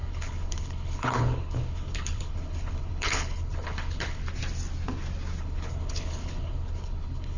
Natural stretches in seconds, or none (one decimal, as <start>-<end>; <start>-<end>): 4.2-5.4